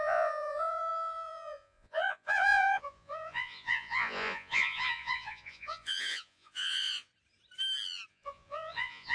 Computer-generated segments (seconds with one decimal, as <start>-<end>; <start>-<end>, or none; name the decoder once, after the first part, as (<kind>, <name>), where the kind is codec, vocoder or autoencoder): 0.0-7.1 (vocoder, Vocos); 8.1-9.1